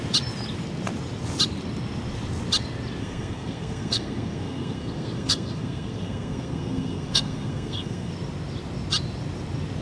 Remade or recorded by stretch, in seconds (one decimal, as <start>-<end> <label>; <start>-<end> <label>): 0.0-3.0 recorded; 3.0-8.1 remade; 8.1-9.8 recorded